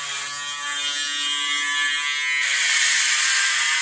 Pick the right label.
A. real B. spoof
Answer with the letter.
A